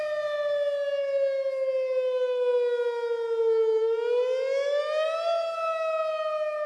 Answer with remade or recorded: recorded